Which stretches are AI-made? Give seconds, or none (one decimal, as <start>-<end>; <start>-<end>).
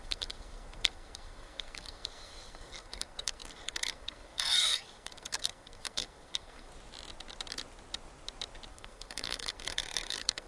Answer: 0.0-6.7; 8.7-10.5